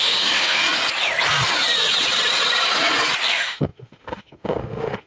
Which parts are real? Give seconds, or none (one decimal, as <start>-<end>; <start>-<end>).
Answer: 0.6-3.3